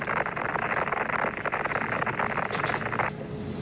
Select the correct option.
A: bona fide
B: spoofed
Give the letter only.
A